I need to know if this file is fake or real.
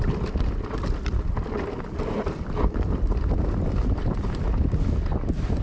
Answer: real